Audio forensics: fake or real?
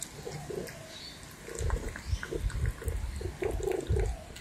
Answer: real